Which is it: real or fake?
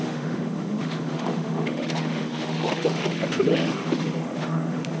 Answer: fake